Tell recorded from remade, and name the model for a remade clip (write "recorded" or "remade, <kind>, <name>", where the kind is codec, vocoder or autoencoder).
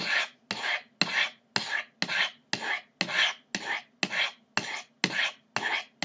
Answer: recorded